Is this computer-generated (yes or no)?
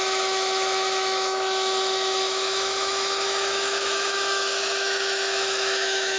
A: yes